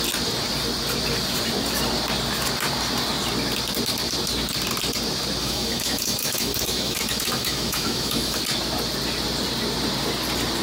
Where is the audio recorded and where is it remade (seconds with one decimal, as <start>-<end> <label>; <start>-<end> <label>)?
0.0-5.4 recorded; 5.4-8.4 remade; 8.4-10.6 recorded